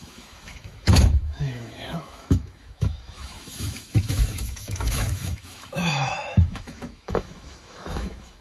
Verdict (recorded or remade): remade